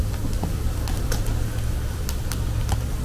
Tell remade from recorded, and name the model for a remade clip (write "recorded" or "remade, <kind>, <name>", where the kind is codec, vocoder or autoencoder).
recorded